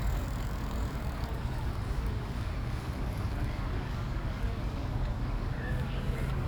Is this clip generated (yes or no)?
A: yes